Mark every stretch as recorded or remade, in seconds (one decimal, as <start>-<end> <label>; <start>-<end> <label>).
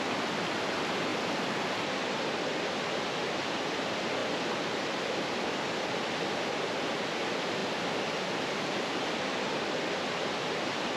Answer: 0.0-1.1 remade; 1.1-3.4 recorded; 3.4-4.2 remade; 4.2-6.2 recorded; 6.2-7.6 remade; 7.6-9.5 recorded; 9.5-11.0 remade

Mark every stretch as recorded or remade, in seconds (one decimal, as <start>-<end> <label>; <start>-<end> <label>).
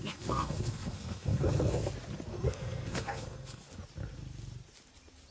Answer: 0.0-1.9 remade; 1.9-2.3 recorded; 2.3-3.6 remade; 3.6-5.3 recorded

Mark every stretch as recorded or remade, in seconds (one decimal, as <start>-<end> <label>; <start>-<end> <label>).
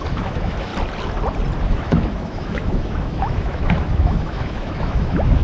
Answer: 0.0-0.7 remade; 0.7-1.6 recorded; 1.6-5.4 remade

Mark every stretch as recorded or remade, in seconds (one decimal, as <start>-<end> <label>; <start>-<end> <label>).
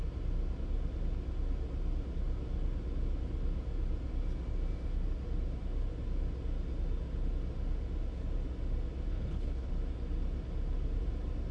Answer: 0.0-9.1 recorded; 9.1-9.7 remade; 9.7-11.5 recorded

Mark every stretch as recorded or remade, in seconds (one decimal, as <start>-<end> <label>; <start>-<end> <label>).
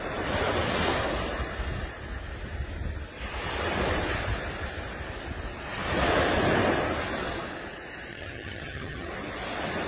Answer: 0.0-8.1 recorded; 8.1-9.1 remade; 9.1-9.9 recorded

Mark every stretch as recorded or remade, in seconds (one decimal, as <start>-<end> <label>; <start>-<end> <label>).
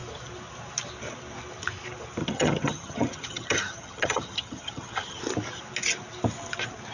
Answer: 0.0-2.2 recorded; 2.2-5.2 remade; 5.2-6.9 recorded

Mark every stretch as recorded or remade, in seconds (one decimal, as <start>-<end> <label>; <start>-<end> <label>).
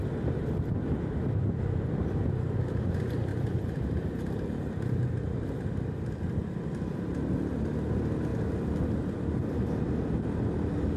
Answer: 0.0-3.3 recorded; 3.3-5.1 remade; 5.1-11.0 recorded